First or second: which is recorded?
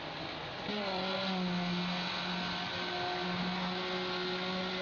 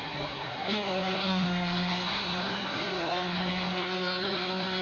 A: first